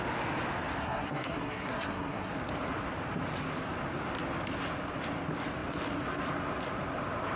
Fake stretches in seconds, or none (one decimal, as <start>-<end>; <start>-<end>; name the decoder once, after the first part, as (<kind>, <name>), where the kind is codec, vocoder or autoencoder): 0.8-2.3 (codec, SNAC)